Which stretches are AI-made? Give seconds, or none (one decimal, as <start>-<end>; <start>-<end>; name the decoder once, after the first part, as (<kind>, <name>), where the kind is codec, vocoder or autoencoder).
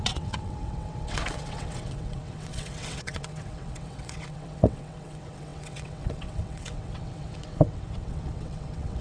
0.0-9.0 (vocoder, WaveNeXt)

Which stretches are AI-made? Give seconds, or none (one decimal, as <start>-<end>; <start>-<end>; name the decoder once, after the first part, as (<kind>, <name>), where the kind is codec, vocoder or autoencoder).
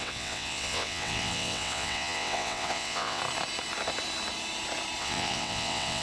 0.0-3.2 (vocoder, WaveNeXt); 5.0-6.0